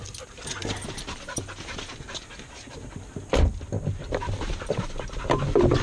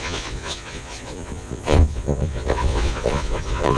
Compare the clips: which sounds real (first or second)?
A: first